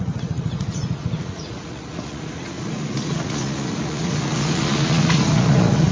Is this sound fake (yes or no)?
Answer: yes